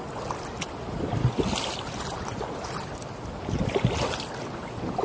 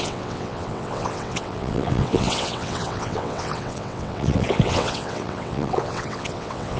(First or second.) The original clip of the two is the first